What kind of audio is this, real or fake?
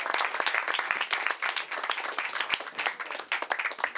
real